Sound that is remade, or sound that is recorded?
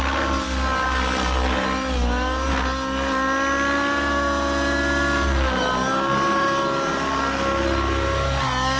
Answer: recorded